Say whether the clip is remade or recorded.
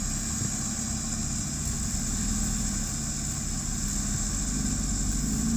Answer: recorded